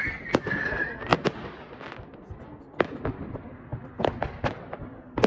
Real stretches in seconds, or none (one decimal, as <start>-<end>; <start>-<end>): 0.0-5.3